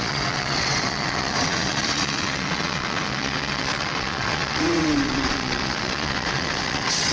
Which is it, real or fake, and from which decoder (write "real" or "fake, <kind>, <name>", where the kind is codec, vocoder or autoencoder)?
fake, vocoder, WaveNeXt